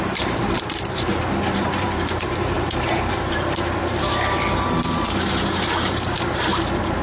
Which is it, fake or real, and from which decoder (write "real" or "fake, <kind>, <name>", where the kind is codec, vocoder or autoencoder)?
fake, vocoder, BigVGAN v2